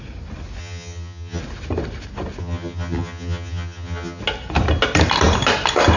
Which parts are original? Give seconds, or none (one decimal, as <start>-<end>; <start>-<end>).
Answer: 0.0-0.6; 1.4-2.4; 4.2-6.0